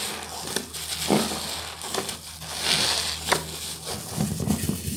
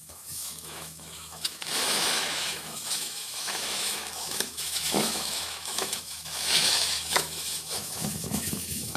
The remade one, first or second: second